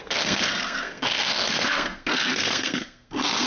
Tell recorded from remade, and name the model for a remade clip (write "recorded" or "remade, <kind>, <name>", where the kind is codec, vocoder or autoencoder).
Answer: remade, codec, SNAC